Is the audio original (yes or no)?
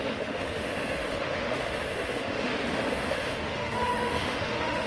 no